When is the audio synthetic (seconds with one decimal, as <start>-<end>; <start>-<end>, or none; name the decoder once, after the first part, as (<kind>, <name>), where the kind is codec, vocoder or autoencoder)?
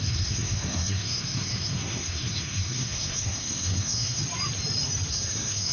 0.0-4.2 (codec, SNAC); 5.1-5.7